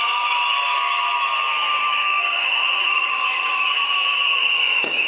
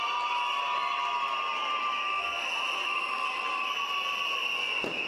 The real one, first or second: second